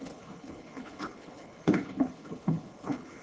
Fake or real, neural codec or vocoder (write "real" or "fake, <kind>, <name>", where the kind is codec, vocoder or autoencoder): fake, codec, HILCodec